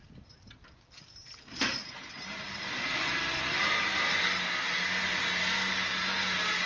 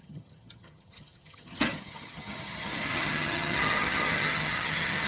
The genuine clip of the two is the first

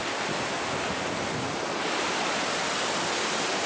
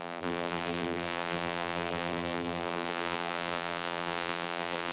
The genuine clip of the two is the first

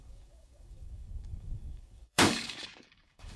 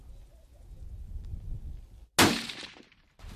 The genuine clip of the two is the second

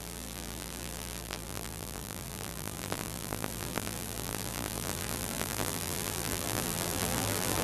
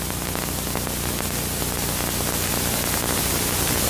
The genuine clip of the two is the second